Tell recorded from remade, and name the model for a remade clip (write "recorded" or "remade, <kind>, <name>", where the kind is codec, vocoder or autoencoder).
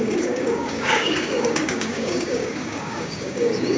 remade, codec, DAC